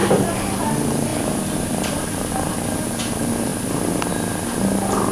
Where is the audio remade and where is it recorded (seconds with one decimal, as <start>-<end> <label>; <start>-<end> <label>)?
0.0-5.1 recorded